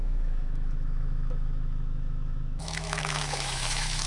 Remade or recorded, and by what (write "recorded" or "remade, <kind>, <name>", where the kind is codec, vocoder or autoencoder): remade, autoencoder, DAC-VAE